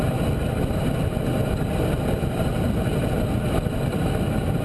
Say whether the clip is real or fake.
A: real